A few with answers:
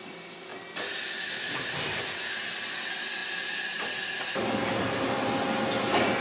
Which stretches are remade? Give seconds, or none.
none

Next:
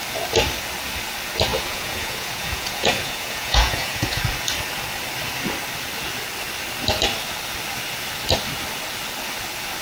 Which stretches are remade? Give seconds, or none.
1.5-4.2

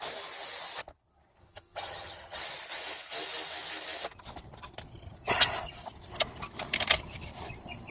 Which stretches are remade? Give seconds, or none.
1.4-2.4

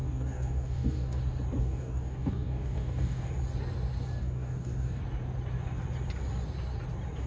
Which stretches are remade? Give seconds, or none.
0.0-1.2; 1.6-3.3; 4.2-5.0

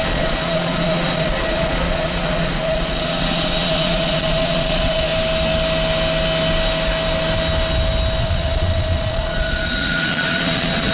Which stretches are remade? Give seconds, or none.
0.0-5.1; 8.2-10.9

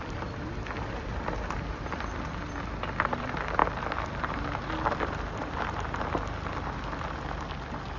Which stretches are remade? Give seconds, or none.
none